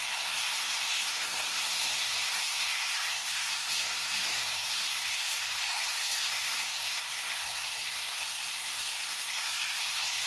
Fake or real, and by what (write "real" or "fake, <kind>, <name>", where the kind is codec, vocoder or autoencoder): fake, codec, SNAC